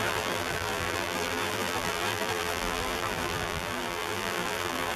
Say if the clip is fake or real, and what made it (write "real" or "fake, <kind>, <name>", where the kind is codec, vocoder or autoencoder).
fake, vocoder, BigVGAN v2